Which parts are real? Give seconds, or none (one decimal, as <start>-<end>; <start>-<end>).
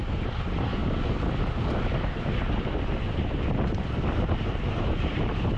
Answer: 0.8-4.2